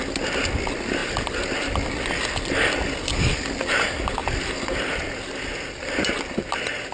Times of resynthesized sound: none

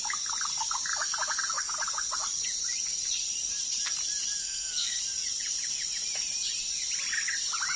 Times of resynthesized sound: 4.4-5.0